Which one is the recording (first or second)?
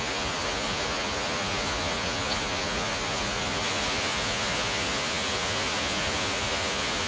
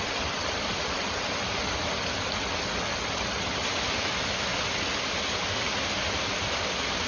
second